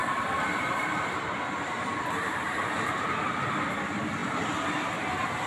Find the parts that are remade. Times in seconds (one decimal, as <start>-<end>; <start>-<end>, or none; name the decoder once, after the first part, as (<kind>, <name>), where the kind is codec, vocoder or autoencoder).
0.0-3.3 (vocoder, BigVGAN v2)